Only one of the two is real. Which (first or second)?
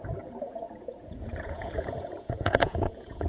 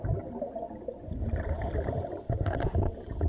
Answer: second